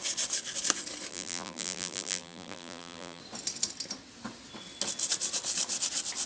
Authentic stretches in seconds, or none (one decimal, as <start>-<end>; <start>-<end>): 0.0-1.1; 3.2-6.3